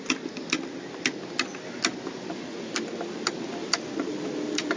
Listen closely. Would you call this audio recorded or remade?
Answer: recorded